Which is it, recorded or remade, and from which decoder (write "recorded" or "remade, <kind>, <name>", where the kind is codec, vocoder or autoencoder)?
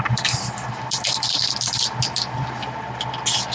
recorded